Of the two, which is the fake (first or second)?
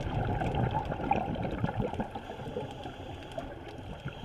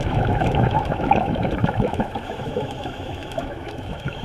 second